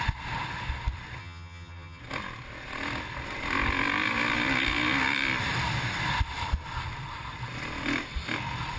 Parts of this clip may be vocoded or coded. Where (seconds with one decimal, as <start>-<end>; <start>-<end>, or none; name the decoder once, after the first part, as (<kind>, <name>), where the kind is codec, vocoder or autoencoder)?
1.2-2.0 (vocoder, HiFi-GAN)